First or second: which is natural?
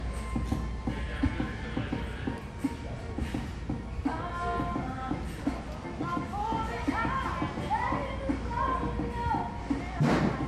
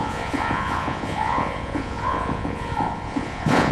first